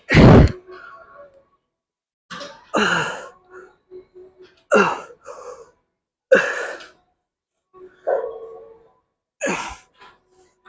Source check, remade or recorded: recorded